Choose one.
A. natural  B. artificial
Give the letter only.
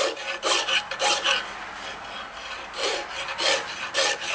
A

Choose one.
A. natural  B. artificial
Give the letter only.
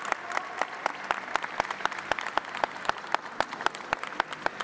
A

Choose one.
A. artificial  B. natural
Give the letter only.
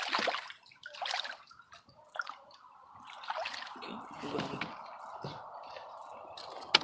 B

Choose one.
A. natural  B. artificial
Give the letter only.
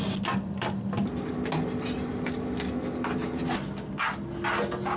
A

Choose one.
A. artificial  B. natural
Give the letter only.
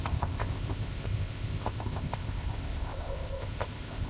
A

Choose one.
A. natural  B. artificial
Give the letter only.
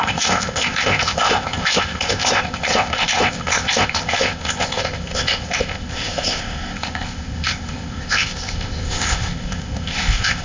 B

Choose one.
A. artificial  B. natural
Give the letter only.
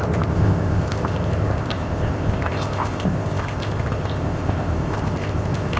A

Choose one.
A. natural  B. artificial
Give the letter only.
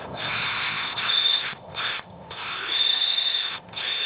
B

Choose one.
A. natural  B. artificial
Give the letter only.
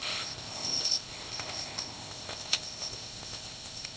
B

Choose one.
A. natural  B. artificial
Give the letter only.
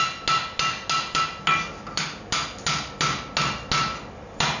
A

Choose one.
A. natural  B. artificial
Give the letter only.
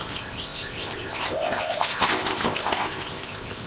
B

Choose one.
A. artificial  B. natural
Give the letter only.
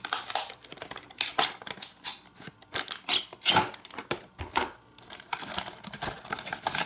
B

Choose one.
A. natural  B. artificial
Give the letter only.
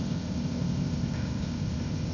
B